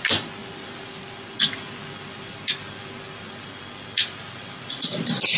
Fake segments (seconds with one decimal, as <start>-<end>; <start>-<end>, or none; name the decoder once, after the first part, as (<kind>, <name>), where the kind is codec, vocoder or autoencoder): none